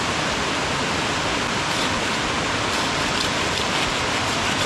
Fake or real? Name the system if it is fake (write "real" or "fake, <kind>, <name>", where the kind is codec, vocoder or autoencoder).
real